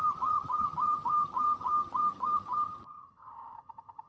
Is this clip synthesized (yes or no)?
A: yes